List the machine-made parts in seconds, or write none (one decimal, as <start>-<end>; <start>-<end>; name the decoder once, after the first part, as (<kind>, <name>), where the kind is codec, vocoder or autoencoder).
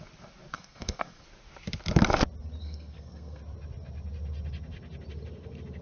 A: 0.5-1.2 (codec, SNAC); 2.6-3.4